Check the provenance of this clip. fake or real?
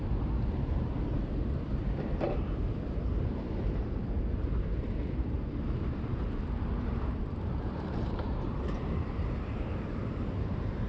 fake